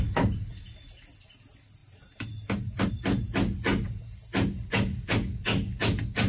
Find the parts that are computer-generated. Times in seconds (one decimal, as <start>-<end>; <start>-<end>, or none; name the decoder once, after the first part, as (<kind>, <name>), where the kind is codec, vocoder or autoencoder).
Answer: 1.8-2.9 (vocoder, BigVGAN v2)